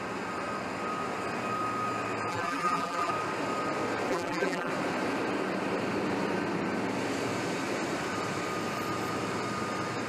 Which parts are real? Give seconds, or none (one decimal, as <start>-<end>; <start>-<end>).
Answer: 0.0-2.3; 3.1-4.1; 4.7-10.1